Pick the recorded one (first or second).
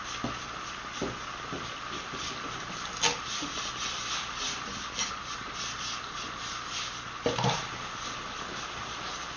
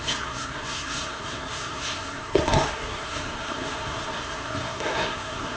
first